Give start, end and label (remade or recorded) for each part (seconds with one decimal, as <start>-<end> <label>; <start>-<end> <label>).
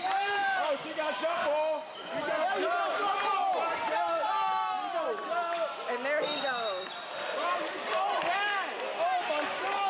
0.0-9.9 recorded